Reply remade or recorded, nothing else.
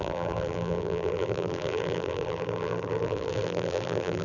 remade